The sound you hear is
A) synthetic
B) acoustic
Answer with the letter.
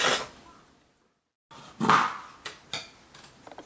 B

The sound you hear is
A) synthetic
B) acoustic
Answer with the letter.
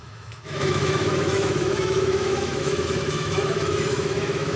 A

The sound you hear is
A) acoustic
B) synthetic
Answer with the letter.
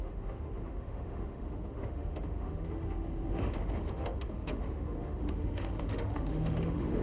B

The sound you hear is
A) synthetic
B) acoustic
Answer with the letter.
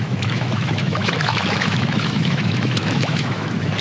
A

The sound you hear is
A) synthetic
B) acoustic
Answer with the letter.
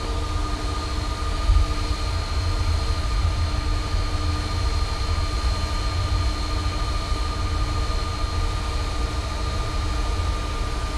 B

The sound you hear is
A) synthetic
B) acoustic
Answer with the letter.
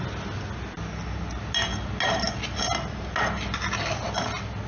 B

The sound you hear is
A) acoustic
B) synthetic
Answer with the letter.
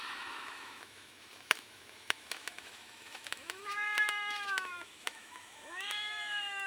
B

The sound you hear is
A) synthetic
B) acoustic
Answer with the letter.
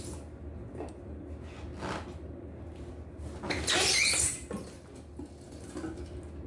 B